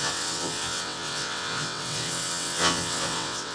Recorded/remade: remade